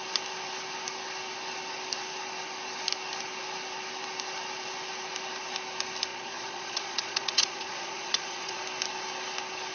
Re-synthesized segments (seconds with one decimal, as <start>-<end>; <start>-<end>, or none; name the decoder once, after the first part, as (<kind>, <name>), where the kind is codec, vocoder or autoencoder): 6.1-8.6 (vocoder, Vocos)